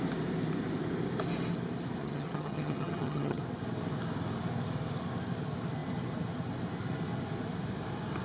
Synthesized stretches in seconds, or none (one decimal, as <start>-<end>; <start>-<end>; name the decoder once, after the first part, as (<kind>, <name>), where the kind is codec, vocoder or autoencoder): 2.0-3.4 (vocoder, HiFi-GAN)